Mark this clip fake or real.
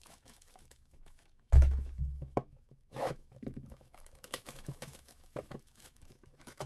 fake